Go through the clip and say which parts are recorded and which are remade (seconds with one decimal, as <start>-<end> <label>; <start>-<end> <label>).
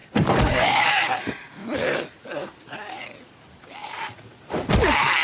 0.0-0.9 remade; 0.9-1.6 recorded; 1.6-4.7 remade; 4.7-5.2 recorded